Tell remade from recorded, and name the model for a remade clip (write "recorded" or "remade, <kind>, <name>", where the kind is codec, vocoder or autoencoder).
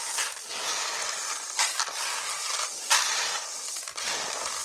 recorded